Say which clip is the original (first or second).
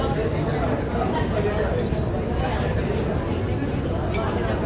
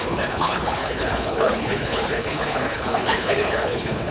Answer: first